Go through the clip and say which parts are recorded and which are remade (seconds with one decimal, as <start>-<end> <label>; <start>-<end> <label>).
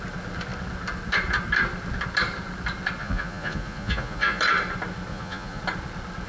0.0-3.0 recorded; 3.0-4.4 remade; 4.4-5.1 recorded; 5.1-5.6 remade; 5.6-6.3 recorded